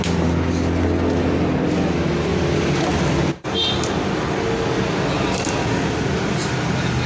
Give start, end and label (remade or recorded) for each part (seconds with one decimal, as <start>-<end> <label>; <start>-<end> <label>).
0.0-7.1 recorded